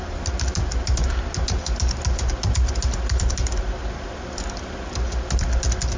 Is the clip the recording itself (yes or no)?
yes